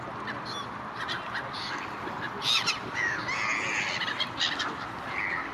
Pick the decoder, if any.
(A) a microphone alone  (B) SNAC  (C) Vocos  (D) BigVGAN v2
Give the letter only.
A